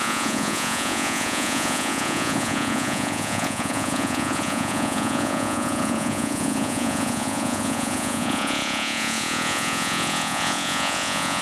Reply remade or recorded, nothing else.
remade